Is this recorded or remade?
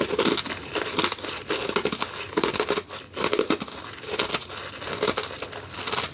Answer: recorded